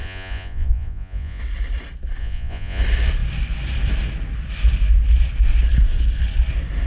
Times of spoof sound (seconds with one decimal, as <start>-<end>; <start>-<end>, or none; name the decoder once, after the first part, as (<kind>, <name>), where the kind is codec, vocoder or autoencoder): 0.0-1.4 (vocoder, Vocos); 2.2-2.8